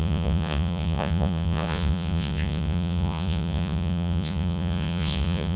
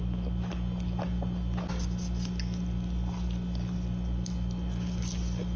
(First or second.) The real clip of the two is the second